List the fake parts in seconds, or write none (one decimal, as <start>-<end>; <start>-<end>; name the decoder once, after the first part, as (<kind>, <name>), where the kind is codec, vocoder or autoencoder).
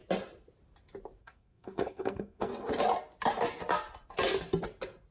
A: 1.2-2.5 (codec, SNAC)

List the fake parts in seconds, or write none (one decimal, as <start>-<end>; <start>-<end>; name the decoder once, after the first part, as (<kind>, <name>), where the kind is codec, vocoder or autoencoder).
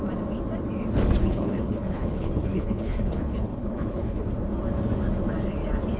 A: 1.2-4.2 (codec, HILCodec)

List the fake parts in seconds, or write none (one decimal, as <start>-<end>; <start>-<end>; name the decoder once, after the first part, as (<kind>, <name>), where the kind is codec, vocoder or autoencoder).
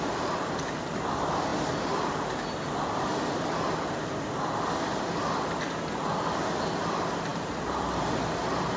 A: 7.3-8.8 (vocoder, BigVGAN v2)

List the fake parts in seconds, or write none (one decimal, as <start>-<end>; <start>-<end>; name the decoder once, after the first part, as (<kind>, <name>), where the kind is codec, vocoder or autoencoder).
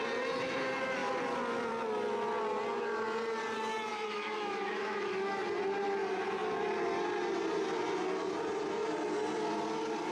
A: 3.9-5.4 (autoencoder, DAC-VAE)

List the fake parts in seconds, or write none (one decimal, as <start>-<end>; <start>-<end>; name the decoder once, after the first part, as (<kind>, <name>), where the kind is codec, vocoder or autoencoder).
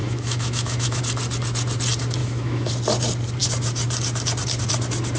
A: 0.0-1.0 (autoencoder, DAC-VAE); 2.2-2.7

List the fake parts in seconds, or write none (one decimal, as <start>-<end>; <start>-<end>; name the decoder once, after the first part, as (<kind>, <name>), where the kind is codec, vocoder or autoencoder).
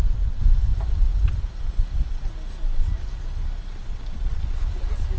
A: 0.0-0.7 (vocoder, BigVGAN v2); 3.8-5.2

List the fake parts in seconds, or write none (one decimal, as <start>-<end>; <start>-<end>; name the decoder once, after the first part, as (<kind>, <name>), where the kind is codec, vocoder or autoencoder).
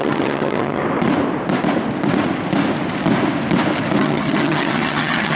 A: 0.0-0.8 (vocoder, HiFi-GAN); 4.0-5.4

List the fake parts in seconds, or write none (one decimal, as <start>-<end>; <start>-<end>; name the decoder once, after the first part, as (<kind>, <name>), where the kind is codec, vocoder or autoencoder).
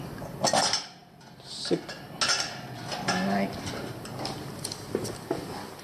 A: none